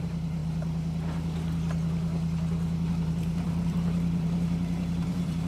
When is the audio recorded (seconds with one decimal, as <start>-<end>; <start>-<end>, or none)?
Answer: 0.4-2.9